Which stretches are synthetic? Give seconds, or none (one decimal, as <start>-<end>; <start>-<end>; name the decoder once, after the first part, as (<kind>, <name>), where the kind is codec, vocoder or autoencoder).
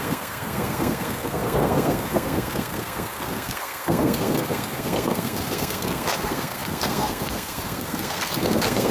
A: 0.0-8.9 (codec, SNAC)